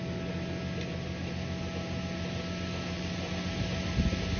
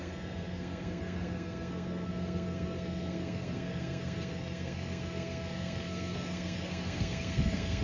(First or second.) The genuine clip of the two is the first